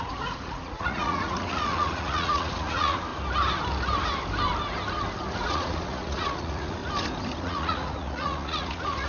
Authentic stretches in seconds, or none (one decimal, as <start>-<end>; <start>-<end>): 3.1-5.4; 6.8-7.4